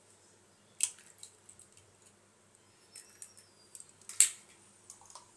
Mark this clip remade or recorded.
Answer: recorded